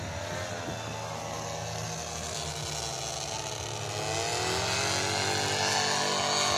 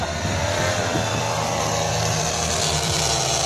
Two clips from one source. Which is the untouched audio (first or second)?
first